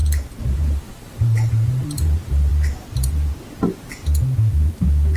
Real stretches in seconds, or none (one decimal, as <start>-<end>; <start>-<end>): 0.0-0.5; 2.5-4.5